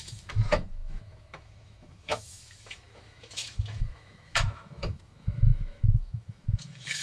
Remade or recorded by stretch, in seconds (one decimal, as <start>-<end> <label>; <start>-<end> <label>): 0.0-7.0 remade